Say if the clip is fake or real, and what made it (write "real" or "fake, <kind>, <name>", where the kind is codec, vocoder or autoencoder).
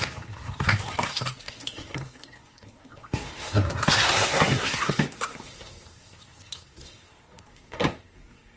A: fake, codec, SNAC